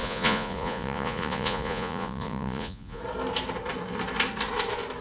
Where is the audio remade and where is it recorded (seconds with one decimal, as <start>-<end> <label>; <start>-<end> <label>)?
0.0-3.0 remade; 3.0-5.0 recorded